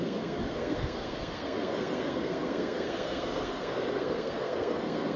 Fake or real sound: fake